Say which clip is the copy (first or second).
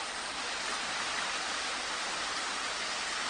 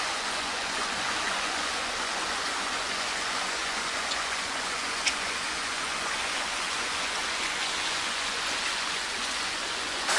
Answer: second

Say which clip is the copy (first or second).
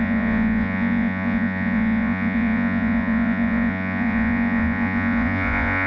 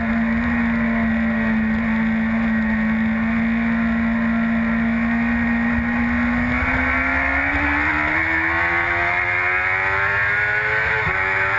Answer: first